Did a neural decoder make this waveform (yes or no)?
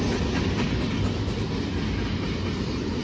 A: no